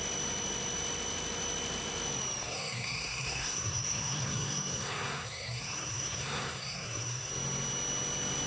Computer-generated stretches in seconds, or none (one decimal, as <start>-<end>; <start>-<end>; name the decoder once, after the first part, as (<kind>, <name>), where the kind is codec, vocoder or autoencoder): 2.4-7.3 (codec, SNAC)